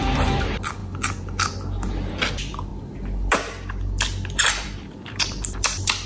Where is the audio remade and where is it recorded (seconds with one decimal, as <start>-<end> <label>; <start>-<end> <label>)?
0.0-0.8 remade; 0.8-2.1 recorded; 2.1-2.7 remade; 2.7-4.4 recorded; 4.4-6.1 remade